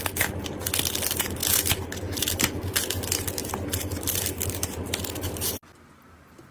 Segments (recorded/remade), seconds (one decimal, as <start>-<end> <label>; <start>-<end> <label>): 0.0-3.4 recorded; 3.4-4.9 remade; 4.9-6.5 recorded